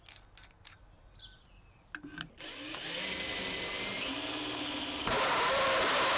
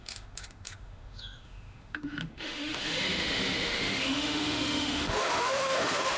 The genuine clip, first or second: first